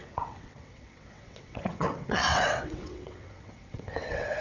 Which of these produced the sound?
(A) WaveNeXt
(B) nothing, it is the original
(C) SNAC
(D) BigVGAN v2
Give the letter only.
A